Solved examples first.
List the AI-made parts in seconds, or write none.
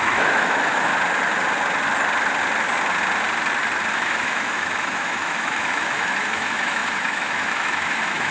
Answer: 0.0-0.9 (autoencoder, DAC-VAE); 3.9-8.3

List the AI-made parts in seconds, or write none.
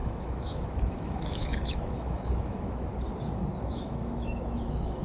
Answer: 0.0-2.9 (autoencoder, DAC-VAE); 3.6-5.0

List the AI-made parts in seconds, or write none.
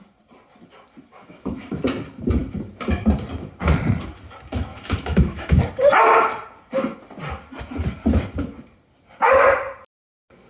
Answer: 1.1-1.7 (autoencoder, DAC-VAE); 4.7-5.6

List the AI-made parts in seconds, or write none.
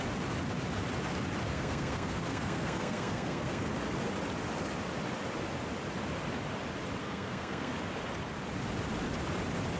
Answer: 1.5-3.7 (codec, SNAC); 7.0-7.7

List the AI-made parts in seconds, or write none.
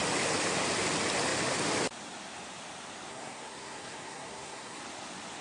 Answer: 3.1-4.8 (codec, SNAC)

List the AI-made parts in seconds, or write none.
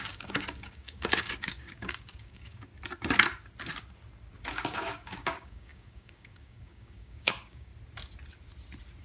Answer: 0.0-2.7 (codec, DAC); 4.5-7.7